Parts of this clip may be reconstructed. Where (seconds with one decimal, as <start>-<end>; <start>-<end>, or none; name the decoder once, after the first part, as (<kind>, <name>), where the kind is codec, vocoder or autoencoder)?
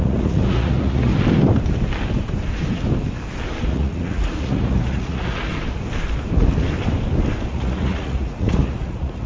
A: 0.0-1.1 (vocoder, Vocos); 3.7-5.5; 7.5-9.3